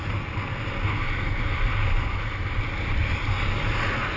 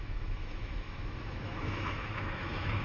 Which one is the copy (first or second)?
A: second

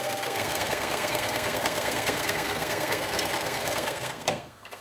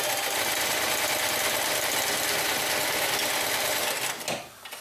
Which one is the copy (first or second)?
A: first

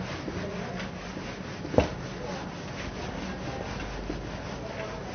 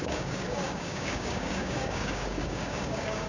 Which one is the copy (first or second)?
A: second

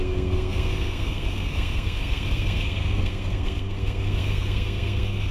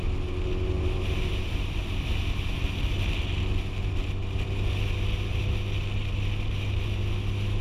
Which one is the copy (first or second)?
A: first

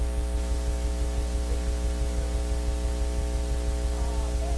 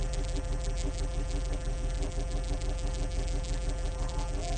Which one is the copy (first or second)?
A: second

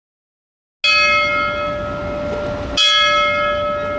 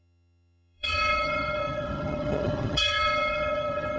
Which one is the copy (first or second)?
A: second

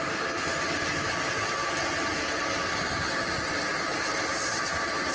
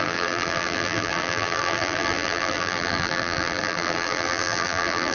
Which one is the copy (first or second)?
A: second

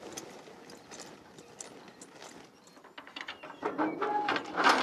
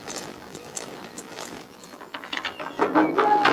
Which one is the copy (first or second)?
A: second